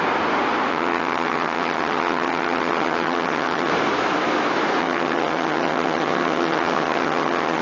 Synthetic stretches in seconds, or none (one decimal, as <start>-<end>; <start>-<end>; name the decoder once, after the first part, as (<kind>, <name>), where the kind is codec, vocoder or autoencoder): 0.7-3.7 (vocoder, HiFi-GAN); 4.8-7.6